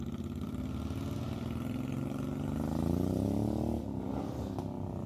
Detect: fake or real real